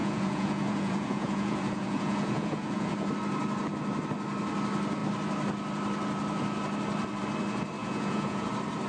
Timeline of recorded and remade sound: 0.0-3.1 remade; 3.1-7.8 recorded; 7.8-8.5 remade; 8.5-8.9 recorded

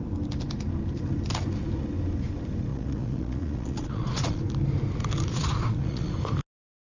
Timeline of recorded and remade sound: 0.0-2.7 recorded; 2.7-4.4 remade; 4.4-5.3 recorded; 5.3-6.1 remade; 6.1-6.9 recorded

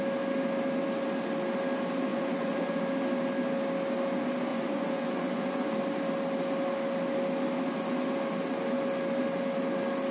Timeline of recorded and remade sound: 0.0-2.1 recorded; 2.1-2.8 remade; 2.8-4.5 recorded; 4.5-5.7 remade; 5.7-10.1 recorded

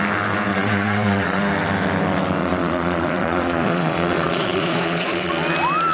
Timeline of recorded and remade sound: 0.0-0.5 recorded; 0.5-1.4 remade; 1.4-2.4 recorded; 2.4-5.3 remade; 5.3-5.9 recorded